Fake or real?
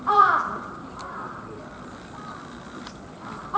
fake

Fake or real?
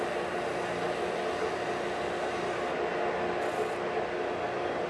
real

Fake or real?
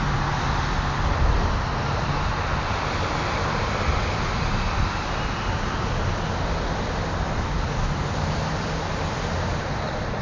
real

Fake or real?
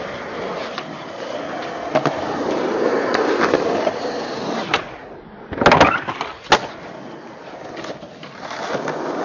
real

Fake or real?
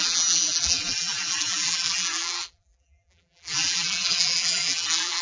fake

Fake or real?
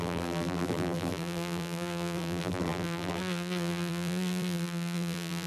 fake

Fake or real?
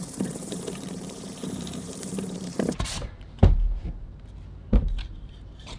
fake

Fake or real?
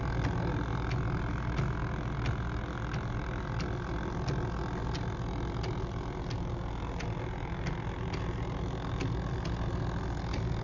real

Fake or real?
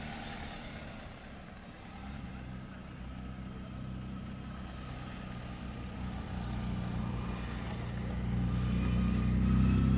real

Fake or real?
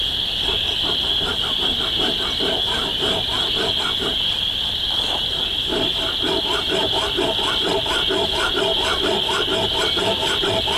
real